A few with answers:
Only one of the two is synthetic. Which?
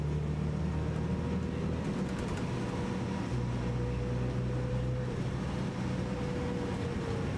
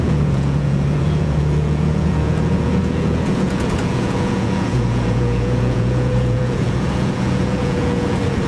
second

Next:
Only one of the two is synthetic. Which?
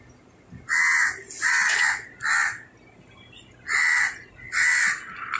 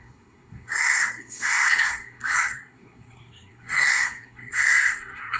second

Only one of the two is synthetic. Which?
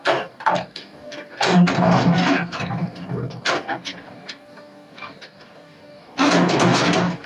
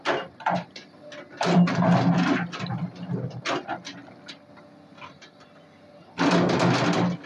first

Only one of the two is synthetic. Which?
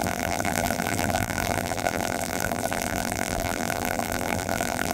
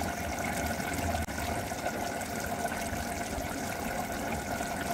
first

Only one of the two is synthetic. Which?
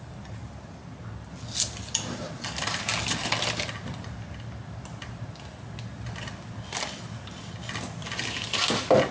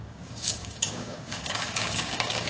second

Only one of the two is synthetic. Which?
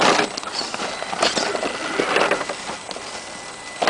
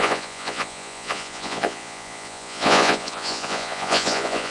second